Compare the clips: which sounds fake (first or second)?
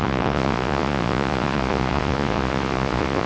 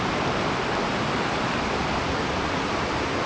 first